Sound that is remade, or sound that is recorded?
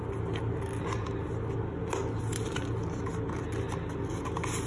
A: recorded